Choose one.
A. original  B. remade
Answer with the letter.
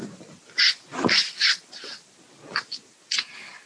A